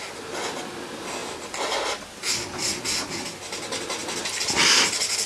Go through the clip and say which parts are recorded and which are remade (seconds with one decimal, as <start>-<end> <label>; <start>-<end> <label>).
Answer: 0.0-5.3 recorded